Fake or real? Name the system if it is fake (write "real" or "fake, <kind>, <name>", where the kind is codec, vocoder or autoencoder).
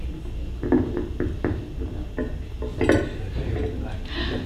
real